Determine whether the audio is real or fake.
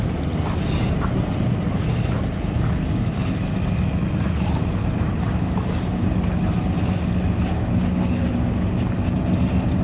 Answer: real